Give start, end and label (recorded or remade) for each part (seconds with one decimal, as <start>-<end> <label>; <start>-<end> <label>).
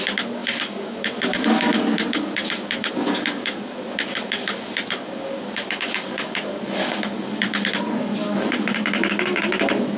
0.0-10.0 remade